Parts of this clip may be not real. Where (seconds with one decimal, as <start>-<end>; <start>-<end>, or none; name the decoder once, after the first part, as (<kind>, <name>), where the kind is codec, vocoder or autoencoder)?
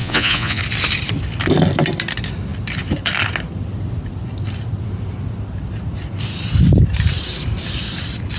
0.0-0.6 (vocoder, Vocos)